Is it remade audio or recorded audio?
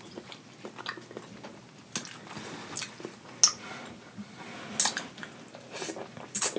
recorded